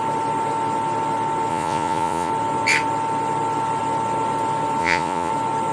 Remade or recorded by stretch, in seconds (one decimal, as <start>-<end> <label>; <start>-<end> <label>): 0.0-1.5 recorded; 1.5-2.3 remade; 2.3-4.8 recorded; 4.8-5.3 remade; 5.3-5.7 recorded